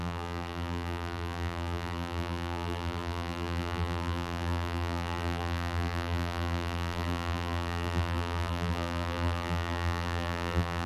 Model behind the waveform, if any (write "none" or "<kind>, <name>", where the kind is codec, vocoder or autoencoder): vocoder, BigVGAN v2